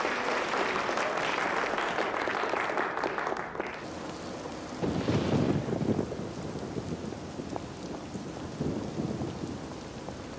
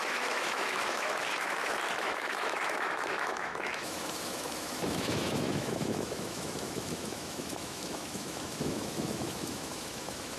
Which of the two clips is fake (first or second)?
second